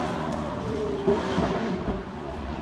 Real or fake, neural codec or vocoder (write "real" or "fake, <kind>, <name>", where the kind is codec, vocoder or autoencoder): fake, vocoder, Vocos